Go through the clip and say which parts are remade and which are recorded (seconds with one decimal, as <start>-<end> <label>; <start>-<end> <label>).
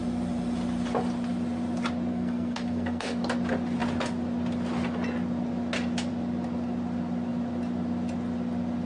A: 0.0-2.1 recorded; 2.1-3.2 remade; 3.2-8.9 recorded